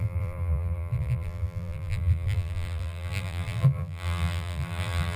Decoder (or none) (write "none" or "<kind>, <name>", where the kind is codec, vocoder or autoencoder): vocoder, BigVGAN v2